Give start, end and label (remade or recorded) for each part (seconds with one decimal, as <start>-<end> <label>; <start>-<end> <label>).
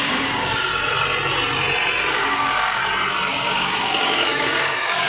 0.0-0.7 remade; 0.7-2.1 recorded; 2.1-2.8 remade; 2.8-3.3 recorded; 3.3-5.1 remade